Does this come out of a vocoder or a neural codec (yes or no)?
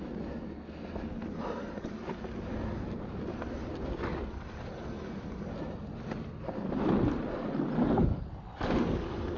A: no